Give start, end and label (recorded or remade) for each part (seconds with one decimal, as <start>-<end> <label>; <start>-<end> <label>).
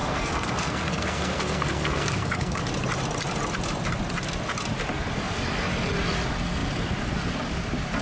0.0-2.6 remade; 2.6-8.0 recorded